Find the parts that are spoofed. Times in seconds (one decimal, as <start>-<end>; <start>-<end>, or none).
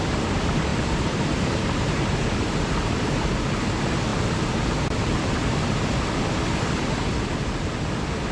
0.7-1.7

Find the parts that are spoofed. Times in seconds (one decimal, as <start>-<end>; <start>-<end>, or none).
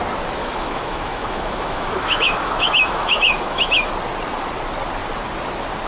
0.4-3.9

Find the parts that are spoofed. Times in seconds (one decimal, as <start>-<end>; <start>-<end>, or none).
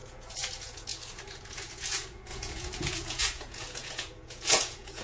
0.0-5.0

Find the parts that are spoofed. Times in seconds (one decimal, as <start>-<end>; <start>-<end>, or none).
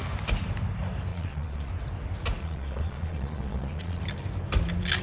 1.1-1.7; 2.4-4.0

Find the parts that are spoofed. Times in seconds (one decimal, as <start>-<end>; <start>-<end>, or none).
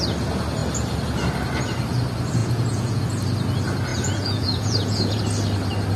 2.4-3.0; 3.9-5.2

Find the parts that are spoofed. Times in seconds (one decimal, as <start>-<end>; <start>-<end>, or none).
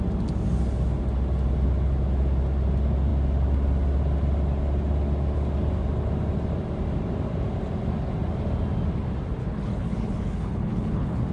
9.4-11.3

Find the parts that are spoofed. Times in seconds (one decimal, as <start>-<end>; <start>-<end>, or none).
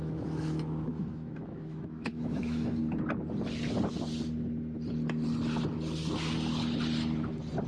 0.0-2.8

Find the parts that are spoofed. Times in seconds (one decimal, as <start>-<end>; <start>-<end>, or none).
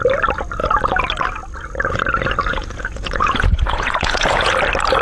2.5-4.5